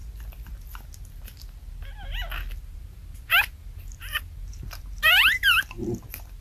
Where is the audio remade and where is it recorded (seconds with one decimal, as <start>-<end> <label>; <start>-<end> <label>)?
0.0-2.6 recorded; 2.6-6.4 remade